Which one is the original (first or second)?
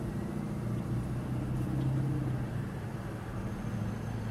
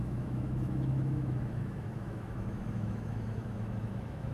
first